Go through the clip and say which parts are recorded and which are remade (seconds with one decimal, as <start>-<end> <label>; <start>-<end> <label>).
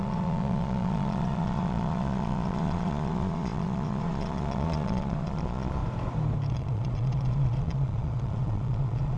0.0-5.8 remade; 5.8-6.5 recorded; 6.5-9.2 remade